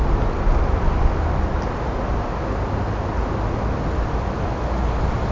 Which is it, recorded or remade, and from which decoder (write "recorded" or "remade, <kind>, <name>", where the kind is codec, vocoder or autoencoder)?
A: recorded